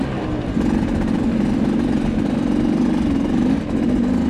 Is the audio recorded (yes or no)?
yes